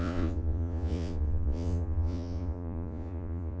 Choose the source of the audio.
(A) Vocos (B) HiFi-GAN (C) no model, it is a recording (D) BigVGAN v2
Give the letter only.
A